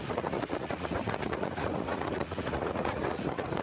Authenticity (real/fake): fake